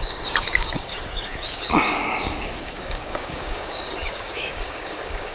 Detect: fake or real fake